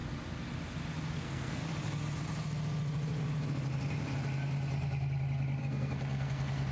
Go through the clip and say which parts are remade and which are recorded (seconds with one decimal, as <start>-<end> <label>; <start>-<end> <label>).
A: 0.0-1.1 recorded; 1.1-1.6 remade; 1.6-5.6 recorded; 5.6-6.7 remade

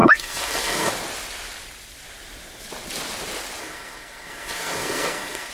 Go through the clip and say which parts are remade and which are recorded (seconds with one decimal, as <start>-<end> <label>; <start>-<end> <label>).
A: 0.0-0.9 remade; 0.9-3.6 recorded; 3.6-5.5 remade

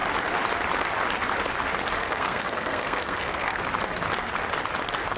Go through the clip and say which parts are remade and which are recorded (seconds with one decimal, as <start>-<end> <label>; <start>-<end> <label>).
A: 0.0-2.0 recorded; 2.0-3.6 remade; 3.6-5.2 recorded

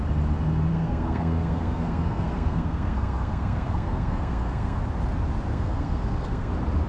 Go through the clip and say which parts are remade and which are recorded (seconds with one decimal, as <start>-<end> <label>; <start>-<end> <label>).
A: 0.0-0.7 recorded; 0.7-4.8 remade; 4.8-5.5 recorded; 5.5-6.5 remade; 6.5-6.9 recorded